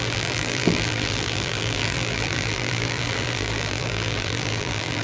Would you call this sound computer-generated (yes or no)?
yes